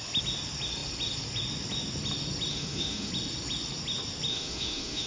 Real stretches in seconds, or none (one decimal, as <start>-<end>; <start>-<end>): 0.0-2.5; 3.1-4.3